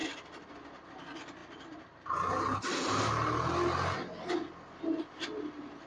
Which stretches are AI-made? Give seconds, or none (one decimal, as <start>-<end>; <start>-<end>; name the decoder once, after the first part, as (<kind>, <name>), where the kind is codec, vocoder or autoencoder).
none